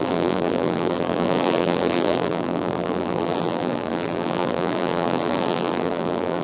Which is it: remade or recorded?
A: remade